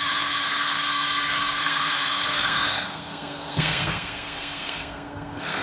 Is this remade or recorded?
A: remade